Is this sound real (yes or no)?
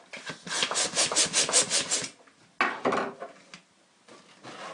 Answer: yes